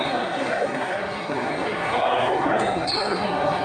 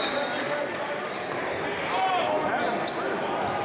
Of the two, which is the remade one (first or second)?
first